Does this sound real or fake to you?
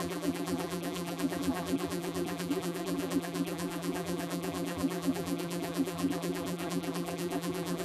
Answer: fake